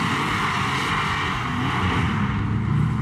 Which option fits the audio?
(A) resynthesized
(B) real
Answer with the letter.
B